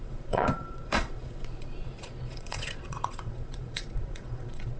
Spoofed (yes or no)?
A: yes